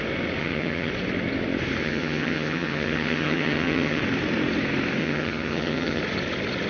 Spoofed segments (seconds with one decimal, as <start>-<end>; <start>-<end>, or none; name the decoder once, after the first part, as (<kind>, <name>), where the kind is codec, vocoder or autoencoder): 0.4-0.9 (vocoder, HiFi-GAN); 1.8-4.0; 5.0-6.0

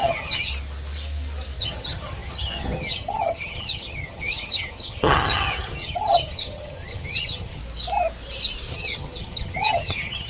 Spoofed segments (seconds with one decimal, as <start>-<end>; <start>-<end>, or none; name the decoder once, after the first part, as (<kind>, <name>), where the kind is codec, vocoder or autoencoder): 0.0-0.5 (vocoder, HiFi-GAN); 1.6-7.6; 8.7-10.3

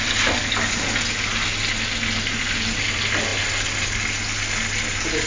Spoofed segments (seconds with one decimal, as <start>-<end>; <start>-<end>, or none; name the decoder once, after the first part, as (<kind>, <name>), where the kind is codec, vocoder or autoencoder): none